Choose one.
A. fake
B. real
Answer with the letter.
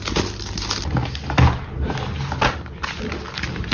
B